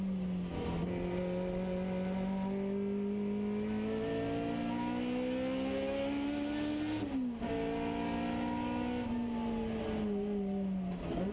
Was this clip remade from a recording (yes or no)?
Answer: no